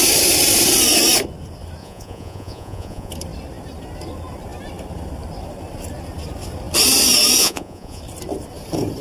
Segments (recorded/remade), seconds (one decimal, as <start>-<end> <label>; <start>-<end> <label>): 0.0-1.8 recorded; 1.8-3.1 remade; 3.1-7.4 recorded; 7.4-8.0 remade; 8.0-9.0 recorded